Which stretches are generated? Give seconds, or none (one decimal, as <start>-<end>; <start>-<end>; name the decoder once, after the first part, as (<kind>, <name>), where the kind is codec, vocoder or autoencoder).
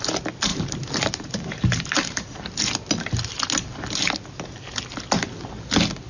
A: 0.5-2.4 (vocoder, BigVGAN v2)